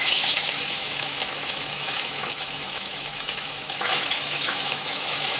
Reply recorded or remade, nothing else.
remade